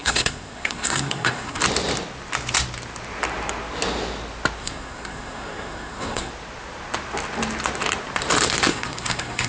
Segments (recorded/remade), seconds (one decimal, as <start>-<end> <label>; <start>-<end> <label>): 0.0-1.6 remade; 1.6-4.6 recorded; 4.6-6.3 remade; 6.3-8.7 recorded; 8.7-9.5 remade

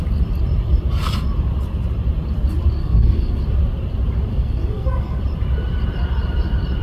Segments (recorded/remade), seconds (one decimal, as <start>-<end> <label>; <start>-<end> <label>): 0.0-2.8 recorded; 2.8-3.4 remade; 3.4-4.3 recorded; 4.3-5.2 remade; 5.2-6.8 recorded

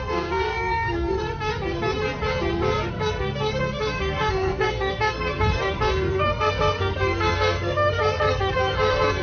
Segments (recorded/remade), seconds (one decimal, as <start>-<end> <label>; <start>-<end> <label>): 0.0-1.5 remade; 1.5-2.9 recorded; 2.9-9.2 remade

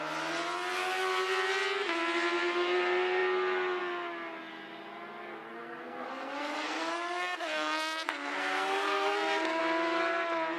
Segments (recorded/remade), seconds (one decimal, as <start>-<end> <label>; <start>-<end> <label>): 0.0-5.5 recorded; 5.5-9.6 remade; 9.6-10.6 recorded

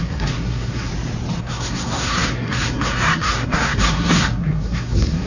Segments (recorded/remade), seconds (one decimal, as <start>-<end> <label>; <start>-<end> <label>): 0.0-0.9 remade; 0.9-1.4 recorded; 1.4-5.3 remade

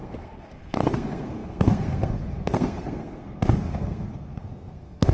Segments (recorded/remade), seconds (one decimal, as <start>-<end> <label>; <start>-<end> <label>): 0.0-5.1 remade

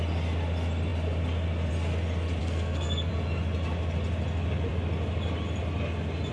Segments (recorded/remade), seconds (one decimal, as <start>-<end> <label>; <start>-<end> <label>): 0.0-2.4 recorded; 2.4-3.1 remade; 3.1-6.3 recorded